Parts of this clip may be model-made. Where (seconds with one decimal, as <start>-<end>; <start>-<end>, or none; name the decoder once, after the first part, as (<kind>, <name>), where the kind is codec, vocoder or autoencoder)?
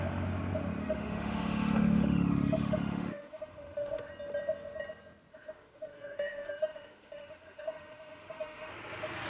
0.8-4.1 (autoencoder, DAC-VAE); 5.3-8.7